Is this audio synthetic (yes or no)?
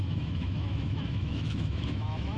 yes